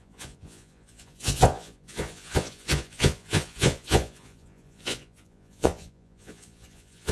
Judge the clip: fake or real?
fake